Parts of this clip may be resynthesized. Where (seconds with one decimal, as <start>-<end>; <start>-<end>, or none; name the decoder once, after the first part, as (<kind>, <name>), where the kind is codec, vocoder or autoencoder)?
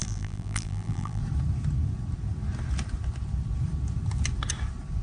0.0-1.2 (vocoder, BigVGAN v2)